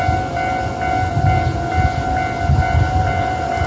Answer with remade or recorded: recorded